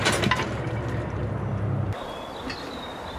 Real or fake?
real